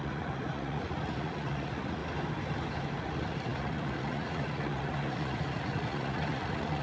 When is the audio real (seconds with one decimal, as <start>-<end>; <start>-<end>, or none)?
2.0-3.0